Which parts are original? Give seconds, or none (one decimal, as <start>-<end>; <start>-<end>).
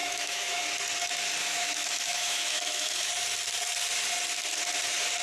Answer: 0.6-1.4; 3.1-5.2